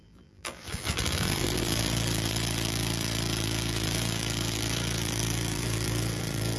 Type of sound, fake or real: fake